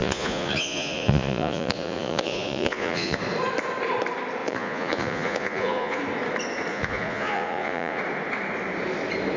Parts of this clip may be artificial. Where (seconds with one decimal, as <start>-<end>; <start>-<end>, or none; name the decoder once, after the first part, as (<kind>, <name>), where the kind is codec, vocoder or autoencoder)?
0.0-3.2 (vocoder, Vocos); 4.4-6.0; 6.7-8.0